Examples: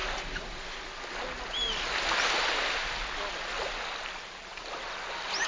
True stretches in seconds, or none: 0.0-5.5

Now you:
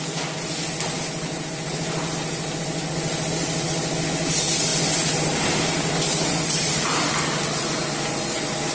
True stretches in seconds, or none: 0.0-8.7

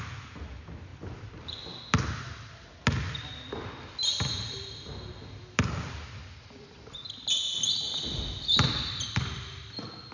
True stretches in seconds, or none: 0.0-10.1

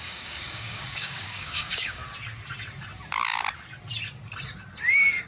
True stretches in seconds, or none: 2.0-5.3

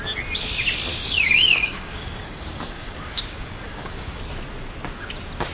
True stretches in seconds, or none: 0.0-0.9; 4.2-5.5